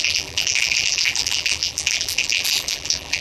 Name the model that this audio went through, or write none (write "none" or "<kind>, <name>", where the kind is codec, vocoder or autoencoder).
vocoder, BigVGAN v2